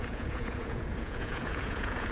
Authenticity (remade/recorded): remade